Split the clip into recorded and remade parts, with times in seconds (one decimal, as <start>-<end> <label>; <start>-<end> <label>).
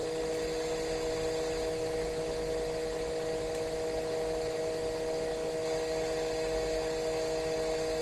0.0-8.0 recorded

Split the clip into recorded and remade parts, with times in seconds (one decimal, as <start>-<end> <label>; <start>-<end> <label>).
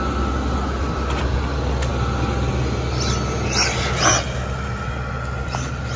0.0-6.0 recorded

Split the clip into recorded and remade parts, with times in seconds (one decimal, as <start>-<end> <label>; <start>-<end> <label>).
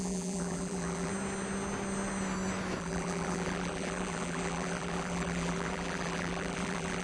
0.0-1.1 remade; 1.1-2.8 recorded; 2.8-7.0 remade